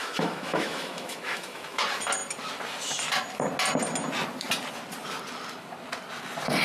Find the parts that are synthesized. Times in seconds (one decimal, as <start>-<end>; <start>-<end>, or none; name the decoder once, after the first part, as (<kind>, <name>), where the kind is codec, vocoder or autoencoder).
0.0-1.8 (autoencoder, DAC-VAE)